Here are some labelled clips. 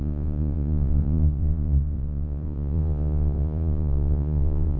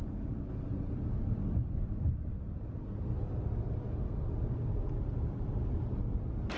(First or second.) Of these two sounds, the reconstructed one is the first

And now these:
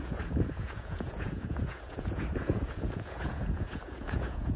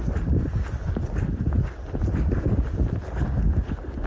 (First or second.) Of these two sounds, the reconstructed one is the first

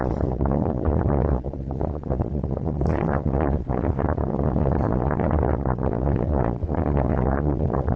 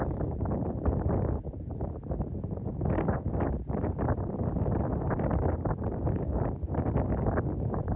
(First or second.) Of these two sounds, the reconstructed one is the first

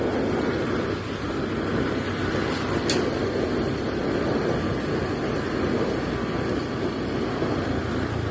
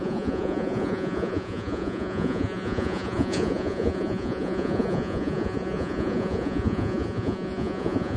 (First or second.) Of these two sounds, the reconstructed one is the second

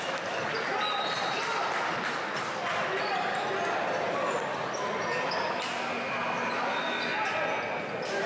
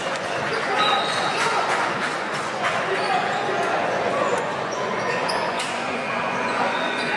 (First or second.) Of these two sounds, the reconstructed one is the second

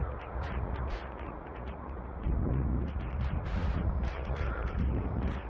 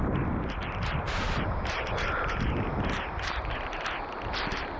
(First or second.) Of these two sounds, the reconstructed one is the first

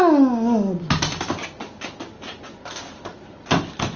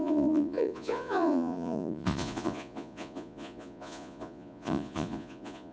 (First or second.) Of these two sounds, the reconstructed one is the second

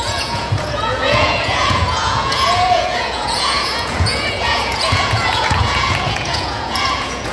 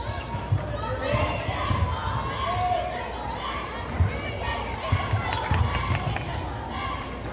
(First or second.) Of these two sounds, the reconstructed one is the first